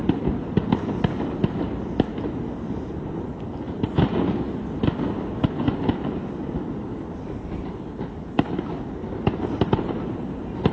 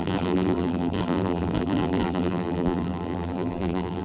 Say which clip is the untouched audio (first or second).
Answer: first